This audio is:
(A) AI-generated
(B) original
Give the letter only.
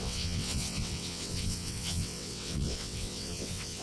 A